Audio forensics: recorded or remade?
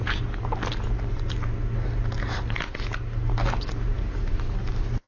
recorded